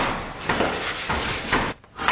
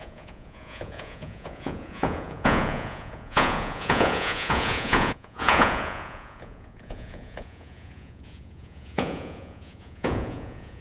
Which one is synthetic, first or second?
second